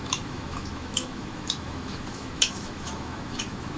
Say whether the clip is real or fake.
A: fake